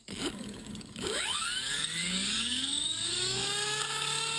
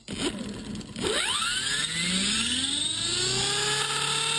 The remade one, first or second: first